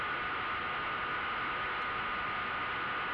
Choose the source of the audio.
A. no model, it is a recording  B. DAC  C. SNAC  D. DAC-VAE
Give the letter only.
A